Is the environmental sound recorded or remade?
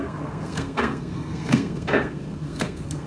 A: remade